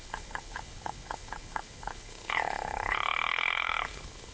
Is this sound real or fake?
fake